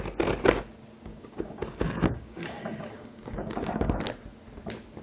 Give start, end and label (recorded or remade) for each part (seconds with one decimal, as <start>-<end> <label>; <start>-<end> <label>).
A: 0.0-1.1 recorded; 1.1-4.0 remade; 4.0-5.0 recorded